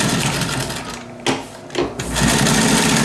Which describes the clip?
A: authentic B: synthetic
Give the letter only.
A